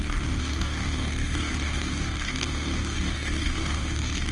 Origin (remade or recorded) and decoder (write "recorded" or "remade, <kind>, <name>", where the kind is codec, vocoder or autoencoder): remade, codec, DAC